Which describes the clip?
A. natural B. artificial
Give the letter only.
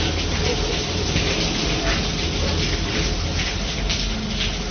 A